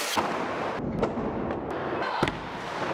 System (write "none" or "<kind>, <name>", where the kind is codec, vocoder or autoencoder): none